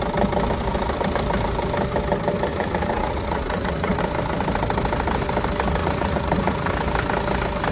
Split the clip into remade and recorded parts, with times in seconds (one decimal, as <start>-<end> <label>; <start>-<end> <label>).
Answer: 0.0-2.5 recorded; 2.5-4.0 remade; 4.0-5.8 recorded; 5.8-6.7 remade; 6.7-7.7 recorded

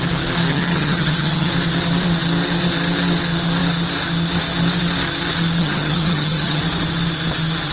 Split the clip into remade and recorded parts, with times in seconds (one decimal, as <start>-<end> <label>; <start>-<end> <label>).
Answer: 0.0-0.5 recorded; 0.5-1.5 remade; 1.5-5.6 recorded; 5.6-6.6 remade; 6.6-7.7 recorded

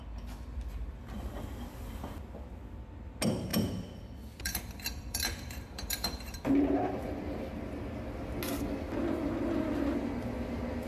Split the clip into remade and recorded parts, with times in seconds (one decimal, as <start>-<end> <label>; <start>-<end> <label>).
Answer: 0.0-3.5 recorded; 3.5-7.5 remade; 7.5-10.9 recorded

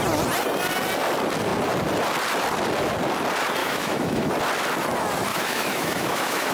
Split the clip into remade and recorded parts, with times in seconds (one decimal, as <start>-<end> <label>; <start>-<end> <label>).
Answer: 0.0-3.6 recorded; 3.6-4.3 remade; 4.3-5.3 recorded; 5.3-6.5 remade

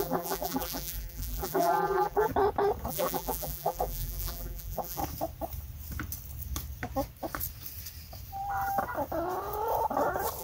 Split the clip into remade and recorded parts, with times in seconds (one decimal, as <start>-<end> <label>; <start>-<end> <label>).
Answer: 0.0-2.3 remade; 2.3-2.9 recorded; 2.9-5.0 remade; 5.0-10.4 recorded